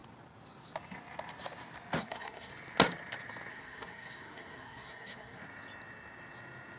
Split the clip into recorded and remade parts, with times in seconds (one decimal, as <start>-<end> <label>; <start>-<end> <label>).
0.0-2.0 recorded; 2.0-2.5 remade; 2.5-3.5 recorded; 3.5-5.4 remade; 5.4-6.8 recorded